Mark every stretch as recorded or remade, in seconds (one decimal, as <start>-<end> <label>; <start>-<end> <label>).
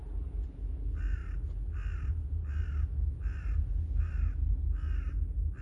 0.0-5.6 recorded